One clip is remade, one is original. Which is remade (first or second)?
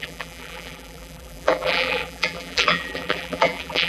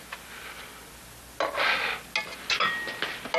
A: first